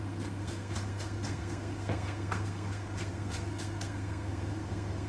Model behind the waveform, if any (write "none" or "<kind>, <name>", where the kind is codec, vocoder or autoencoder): codec, SNAC